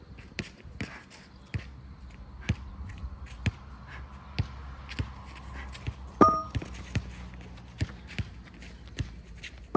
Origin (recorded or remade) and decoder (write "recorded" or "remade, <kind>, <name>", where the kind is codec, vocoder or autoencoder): recorded